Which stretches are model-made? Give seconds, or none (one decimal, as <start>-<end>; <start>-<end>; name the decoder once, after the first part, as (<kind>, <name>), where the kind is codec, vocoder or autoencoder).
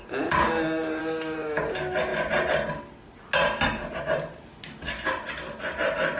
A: 1.0-1.6 (autoencoder, DAC-VAE)